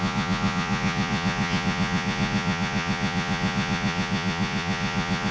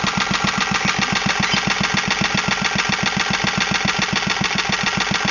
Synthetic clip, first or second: first